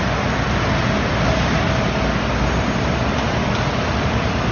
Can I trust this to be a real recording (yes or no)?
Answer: yes